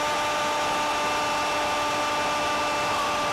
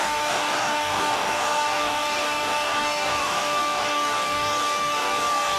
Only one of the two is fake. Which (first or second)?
second